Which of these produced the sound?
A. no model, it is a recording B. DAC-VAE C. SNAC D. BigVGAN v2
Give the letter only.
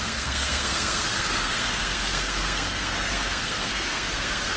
C